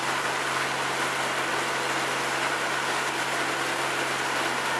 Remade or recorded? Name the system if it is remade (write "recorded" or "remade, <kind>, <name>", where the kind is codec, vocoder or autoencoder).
recorded